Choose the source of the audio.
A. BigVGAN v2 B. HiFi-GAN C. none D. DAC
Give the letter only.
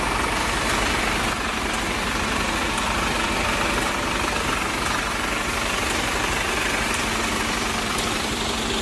A